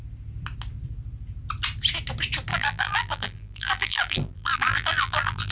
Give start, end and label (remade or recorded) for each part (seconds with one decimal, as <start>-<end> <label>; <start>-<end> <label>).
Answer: 0.0-2.5 recorded; 2.5-5.5 remade